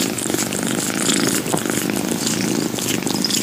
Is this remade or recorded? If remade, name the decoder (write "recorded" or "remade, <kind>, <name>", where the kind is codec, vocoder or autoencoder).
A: recorded